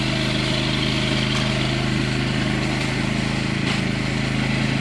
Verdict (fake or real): real